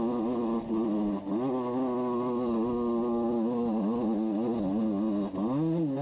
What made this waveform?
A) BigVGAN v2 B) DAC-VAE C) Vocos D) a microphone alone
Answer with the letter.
D